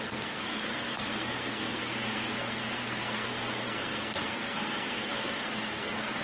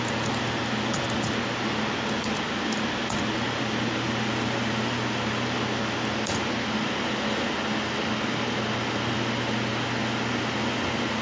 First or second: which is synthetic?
first